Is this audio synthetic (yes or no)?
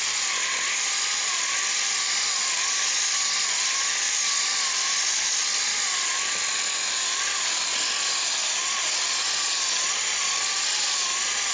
no